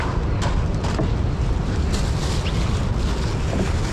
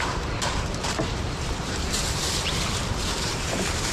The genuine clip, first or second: first